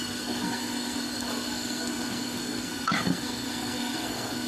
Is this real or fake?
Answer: fake